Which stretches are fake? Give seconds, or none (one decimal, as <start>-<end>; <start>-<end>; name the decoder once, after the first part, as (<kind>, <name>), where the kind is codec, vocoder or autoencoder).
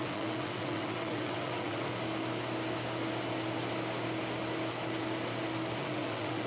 0.0-1.9 (vocoder, WaveNeXt); 5.8-6.5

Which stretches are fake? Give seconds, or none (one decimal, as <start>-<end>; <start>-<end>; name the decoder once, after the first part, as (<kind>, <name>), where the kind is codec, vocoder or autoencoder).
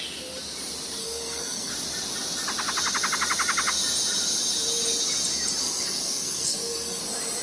1.0-1.7 (codec, SNAC); 5.6-7.0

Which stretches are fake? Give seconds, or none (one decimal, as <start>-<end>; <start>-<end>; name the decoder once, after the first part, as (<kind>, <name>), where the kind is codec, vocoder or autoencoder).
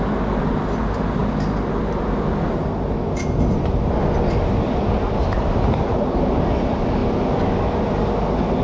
none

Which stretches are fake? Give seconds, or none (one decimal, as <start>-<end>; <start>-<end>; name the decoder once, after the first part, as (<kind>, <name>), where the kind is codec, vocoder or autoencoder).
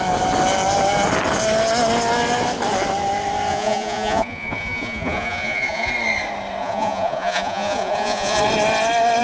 3.5-5.9 (vocoder, Vocos); 6.6-8.4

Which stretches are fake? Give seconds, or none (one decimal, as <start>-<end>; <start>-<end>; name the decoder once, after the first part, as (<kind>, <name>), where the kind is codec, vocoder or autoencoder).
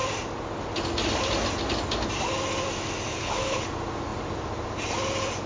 3.1-3.6 (codec, HILCodec)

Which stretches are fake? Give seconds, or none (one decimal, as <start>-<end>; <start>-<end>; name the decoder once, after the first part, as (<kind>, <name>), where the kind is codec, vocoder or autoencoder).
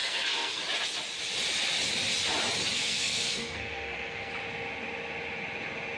0.0-0.6 (codec, SNAC); 2.7-4.3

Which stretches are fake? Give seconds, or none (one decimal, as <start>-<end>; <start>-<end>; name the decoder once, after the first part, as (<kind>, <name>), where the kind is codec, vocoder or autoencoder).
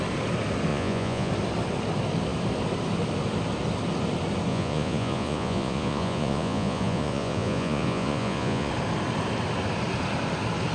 0.7-1.3 (vocoder, Vocos); 4.5-8.7